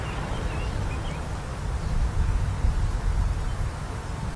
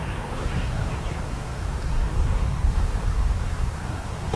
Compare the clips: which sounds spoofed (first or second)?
second